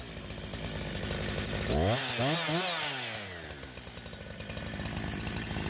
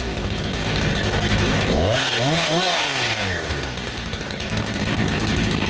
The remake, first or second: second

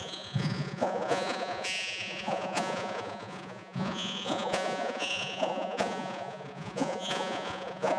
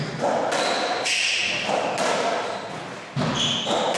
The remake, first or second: first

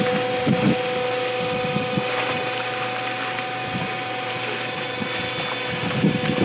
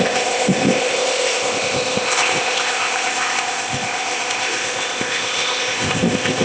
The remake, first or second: second